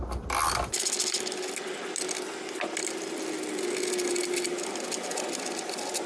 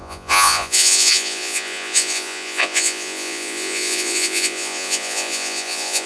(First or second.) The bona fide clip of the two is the first